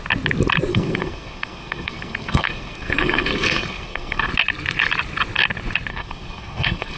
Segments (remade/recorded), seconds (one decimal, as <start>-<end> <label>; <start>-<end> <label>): 0.0-0.7 recorded; 0.7-4.3 remade; 4.3-5.9 recorded; 5.9-7.0 remade